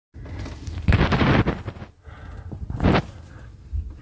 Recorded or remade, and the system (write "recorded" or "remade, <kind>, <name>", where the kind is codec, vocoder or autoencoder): recorded